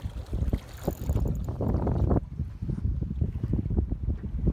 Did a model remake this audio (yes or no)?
no